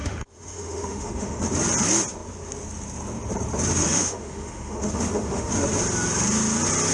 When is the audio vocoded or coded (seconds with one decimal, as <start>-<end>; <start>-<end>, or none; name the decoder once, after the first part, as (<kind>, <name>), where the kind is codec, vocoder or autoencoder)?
0.0-1.4 (autoencoder, DAC-VAE); 3.8-5.5